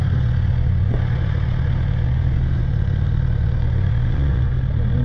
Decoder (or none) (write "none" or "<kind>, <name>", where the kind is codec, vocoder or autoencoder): vocoder, Vocos